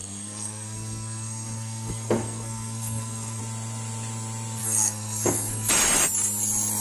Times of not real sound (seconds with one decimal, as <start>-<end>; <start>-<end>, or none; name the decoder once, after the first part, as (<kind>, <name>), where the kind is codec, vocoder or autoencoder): 0.0-3.4 (codec, SNAC); 4.6-5.7